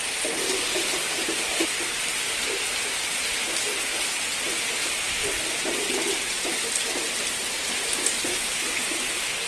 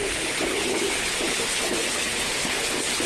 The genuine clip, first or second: first